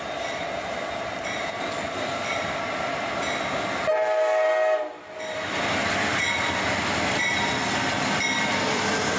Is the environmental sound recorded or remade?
recorded